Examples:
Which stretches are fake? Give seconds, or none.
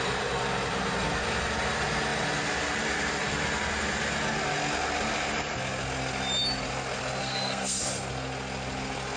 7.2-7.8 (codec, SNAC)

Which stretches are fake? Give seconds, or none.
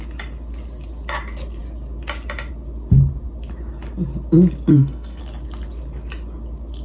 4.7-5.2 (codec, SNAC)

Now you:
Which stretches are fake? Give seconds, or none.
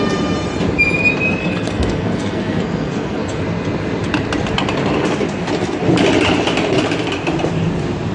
1.4-3.4 (codec, SNAC)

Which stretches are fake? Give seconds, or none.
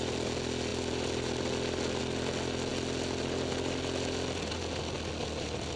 none